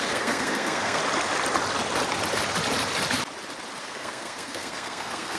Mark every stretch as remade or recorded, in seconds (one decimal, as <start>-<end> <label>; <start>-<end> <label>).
0.0-1.0 remade; 1.0-3.8 recorded; 3.8-5.4 remade